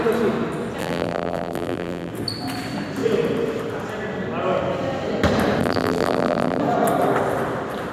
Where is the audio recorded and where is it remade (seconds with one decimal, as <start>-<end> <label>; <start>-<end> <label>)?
0.0-0.8 recorded; 0.8-2.1 remade; 2.1-5.6 recorded; 5.6-6.6 remade; 6.6-7.9 recorded